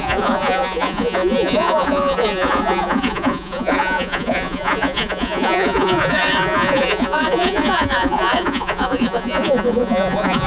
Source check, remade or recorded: remade